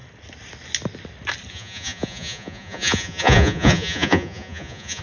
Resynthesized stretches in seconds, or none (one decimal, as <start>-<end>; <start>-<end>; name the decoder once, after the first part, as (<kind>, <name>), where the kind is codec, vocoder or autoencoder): 1.5-5.0 (vocoder, Vocos)

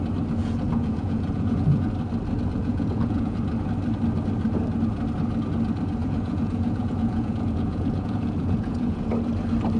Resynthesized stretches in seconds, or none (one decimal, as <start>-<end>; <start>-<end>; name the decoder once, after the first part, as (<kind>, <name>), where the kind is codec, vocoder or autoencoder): 0.4-1.9 (vocoder, Vocos); 2.6-3.4; 6.0-9.1